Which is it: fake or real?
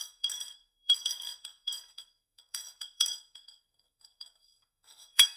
fake